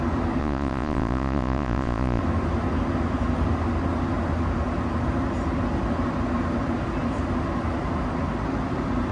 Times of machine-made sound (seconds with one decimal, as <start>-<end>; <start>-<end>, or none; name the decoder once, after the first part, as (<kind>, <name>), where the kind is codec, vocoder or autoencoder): 0.4-2.2 (vocoder, Vocos)